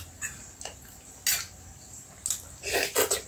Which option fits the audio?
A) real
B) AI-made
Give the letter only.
A